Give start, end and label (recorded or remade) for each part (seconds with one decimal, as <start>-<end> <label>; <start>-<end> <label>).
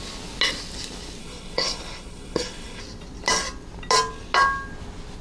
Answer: 0.0-1.2 recorded; 1.2-2.8 remade; 2.8-5.2 recorded